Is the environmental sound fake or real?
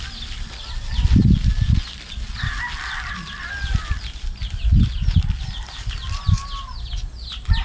real